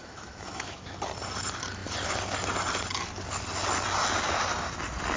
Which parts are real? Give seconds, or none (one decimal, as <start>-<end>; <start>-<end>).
0.9-5.2